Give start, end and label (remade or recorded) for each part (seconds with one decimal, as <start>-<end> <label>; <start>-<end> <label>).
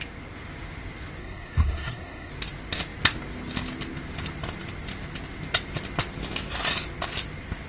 0.0-1.2 recorded; 1.2-2.3 remade; 2.3-7.7 recorded